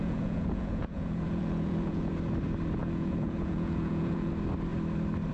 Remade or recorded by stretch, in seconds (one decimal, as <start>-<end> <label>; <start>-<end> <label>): 0.0-2.1 remade; 2.1-2.8 recorded; 2.8-4.3 remade; 4.3-5.3 recorded